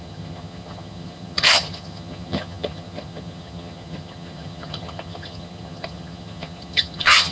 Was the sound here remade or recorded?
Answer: remade